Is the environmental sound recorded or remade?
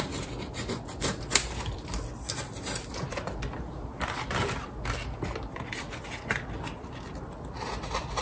recorded